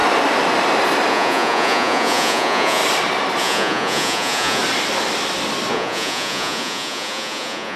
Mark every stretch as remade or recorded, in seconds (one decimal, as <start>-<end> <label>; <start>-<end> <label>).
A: 0.0-1.1 recorded; 1.1-2.8 remade; 2.8-3.4 recorded; 3.4-4.6 remade; 4.6-5.7 recorded; 5.7-7.8 remade